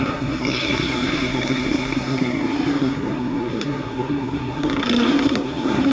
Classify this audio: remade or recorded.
remade